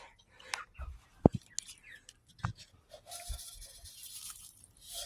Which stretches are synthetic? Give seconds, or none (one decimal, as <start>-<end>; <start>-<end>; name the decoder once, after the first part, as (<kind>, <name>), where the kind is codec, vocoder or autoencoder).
none